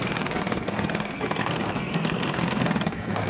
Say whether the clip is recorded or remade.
remade